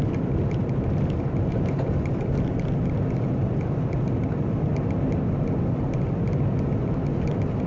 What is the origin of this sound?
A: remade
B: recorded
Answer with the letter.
B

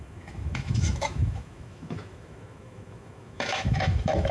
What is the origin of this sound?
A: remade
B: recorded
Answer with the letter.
A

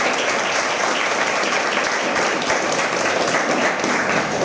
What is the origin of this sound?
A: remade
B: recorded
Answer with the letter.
B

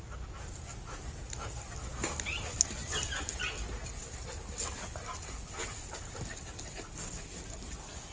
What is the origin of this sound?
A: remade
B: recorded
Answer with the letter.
B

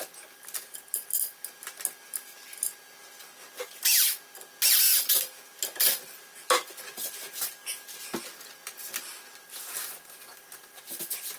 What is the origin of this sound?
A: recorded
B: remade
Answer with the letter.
A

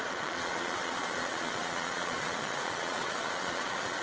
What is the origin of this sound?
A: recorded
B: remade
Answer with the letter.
B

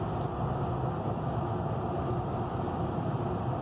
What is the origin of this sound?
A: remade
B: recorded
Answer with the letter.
B